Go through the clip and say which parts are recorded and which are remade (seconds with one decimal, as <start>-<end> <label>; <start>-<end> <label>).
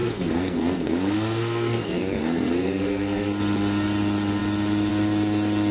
0.0-3.2 remade; 3.2-5.7 recorded